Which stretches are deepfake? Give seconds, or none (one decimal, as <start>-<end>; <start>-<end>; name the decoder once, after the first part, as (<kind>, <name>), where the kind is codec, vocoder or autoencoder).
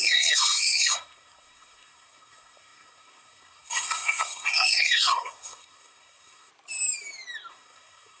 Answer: 0.0-6.5 (codec, SNAC); 7.5-8.2